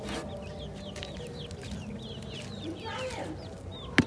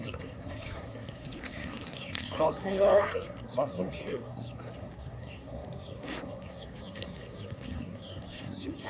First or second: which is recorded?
first